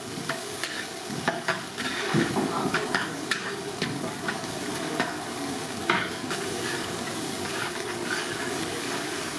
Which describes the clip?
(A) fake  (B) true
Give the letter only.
A